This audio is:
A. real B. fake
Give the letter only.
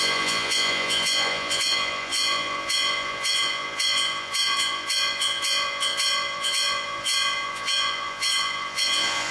B